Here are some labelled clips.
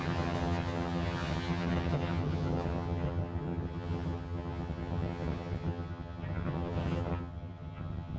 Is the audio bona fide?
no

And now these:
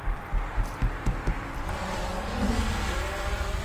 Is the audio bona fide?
yes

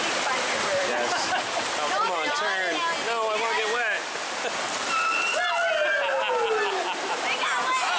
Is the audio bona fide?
yes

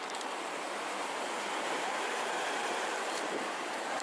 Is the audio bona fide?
no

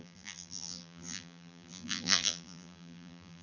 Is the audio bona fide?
no